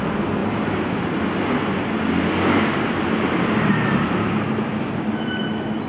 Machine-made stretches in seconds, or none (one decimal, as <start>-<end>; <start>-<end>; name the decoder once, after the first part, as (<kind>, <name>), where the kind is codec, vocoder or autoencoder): none